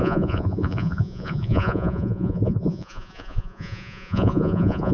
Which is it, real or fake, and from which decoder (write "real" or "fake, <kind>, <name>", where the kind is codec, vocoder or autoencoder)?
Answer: fake, vocoder, Vocos